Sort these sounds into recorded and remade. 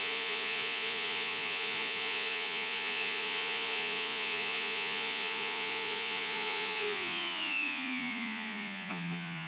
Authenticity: remade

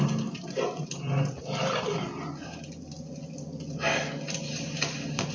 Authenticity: recorded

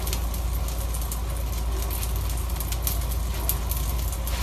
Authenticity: recorded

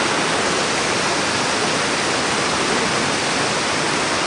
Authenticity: recorded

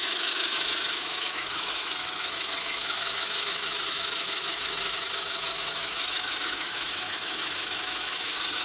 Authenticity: remade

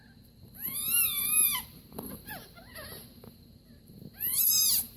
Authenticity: remade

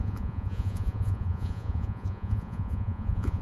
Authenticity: remade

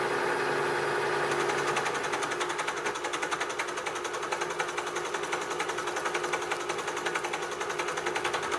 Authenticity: recorded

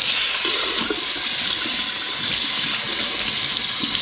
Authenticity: recorded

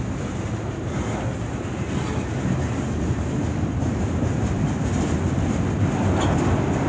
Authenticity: recorded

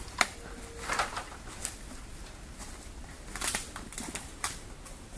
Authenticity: recorded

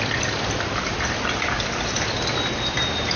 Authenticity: recorded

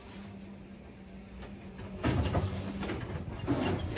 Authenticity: recorded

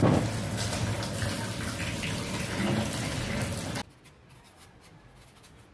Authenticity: recorded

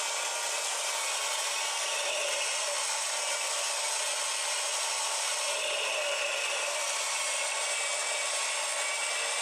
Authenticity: recorded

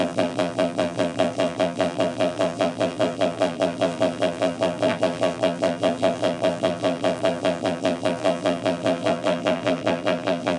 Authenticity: remade